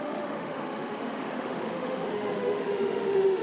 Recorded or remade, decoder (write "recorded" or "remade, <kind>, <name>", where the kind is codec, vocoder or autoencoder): remade, autoencoder, DAC-VAE